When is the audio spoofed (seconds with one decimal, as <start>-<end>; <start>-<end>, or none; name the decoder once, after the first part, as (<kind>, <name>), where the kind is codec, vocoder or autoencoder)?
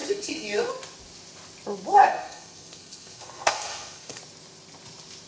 0.0-0.7 (codec, SNAC); 1.9-4.2